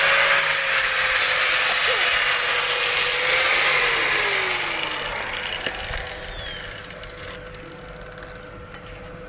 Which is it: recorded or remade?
recorded